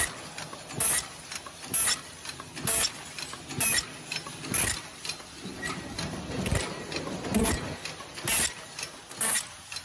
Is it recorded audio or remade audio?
recorded